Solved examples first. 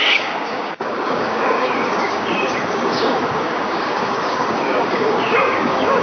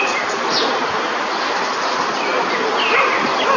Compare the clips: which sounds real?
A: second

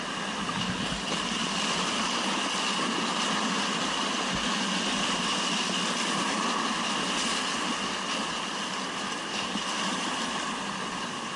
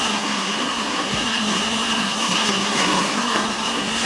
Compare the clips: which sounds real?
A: first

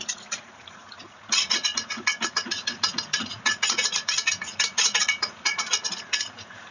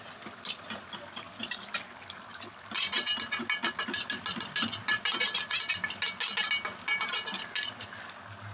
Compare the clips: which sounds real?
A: second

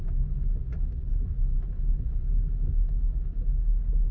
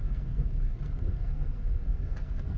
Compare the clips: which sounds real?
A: first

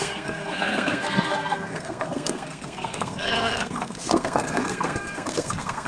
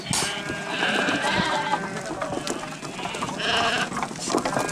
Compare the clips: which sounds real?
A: second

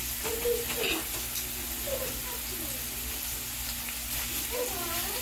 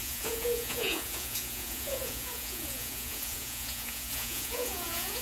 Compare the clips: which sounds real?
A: first